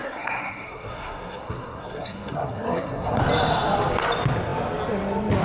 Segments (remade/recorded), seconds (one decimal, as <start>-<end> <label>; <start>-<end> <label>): 0.0-3.2 remade; 3.2-5.4 recorded